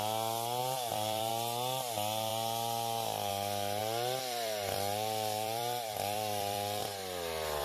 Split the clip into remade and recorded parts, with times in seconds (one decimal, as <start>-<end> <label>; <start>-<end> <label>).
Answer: 0.0-0.6 recorded; 0.6-1.3 remade; 1.3-3.8 recorded; 3.8-7.6 remade